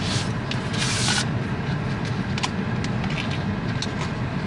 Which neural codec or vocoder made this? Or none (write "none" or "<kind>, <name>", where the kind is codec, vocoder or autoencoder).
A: none